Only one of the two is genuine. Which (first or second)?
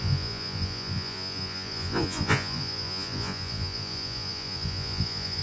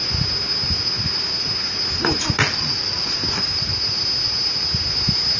second